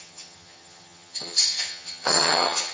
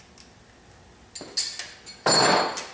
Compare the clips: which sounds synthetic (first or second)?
first